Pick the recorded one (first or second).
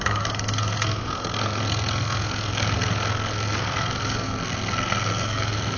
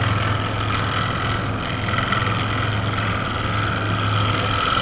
second